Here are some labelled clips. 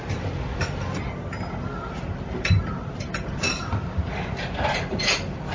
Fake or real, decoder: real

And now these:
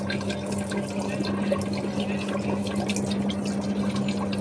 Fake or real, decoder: real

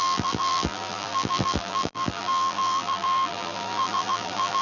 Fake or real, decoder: fake, vocoder, BigVGAN v2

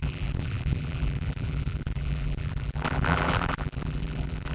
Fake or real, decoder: fake, vocoder, BigVGAN v2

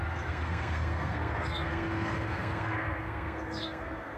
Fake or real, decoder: fake, codec, SNAC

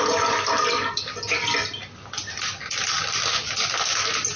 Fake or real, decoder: real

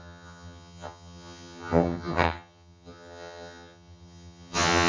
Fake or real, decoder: fake, vocoder, HiFi-GAN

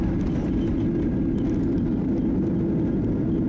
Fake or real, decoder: real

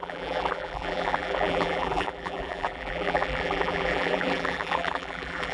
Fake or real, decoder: fake, vocoder, BigVGAN v2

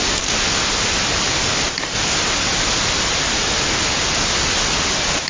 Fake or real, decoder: real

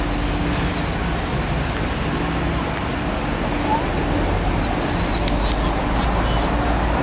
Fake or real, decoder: real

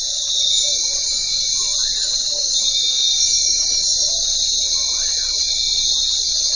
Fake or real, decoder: real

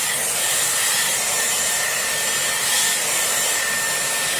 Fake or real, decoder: real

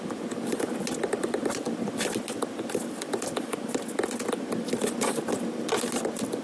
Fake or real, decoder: real